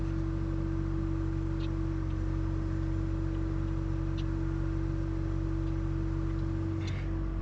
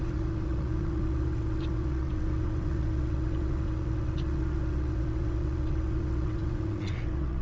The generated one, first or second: second